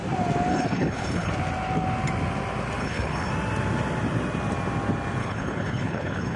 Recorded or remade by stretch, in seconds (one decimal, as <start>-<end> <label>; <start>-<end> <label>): 0.0-0.5 recorded; 0.5-1.3 remade; 1.3-2.8 recorded; 2.8-3.3 remade; 3.3-5.2 recorded; 5.2-6.4 remade